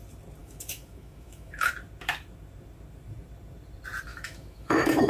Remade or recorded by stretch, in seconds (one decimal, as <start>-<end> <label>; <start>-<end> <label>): 0.0-0.4 recorded; 0.4-1.7 remade; 1.7-4.1 recorded; 4.1-5.1 remade